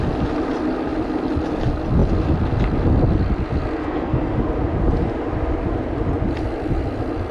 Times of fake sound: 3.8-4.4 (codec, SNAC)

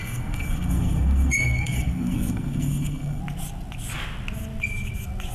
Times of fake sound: 0.0-3.2 (codec, SNAC)

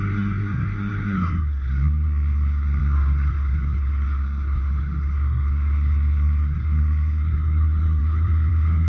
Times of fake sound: 0.0-8.9 (codec, SNAC)

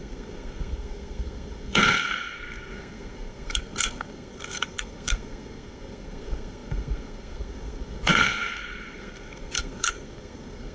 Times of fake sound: 0.0-10.7 (codec, SNAC)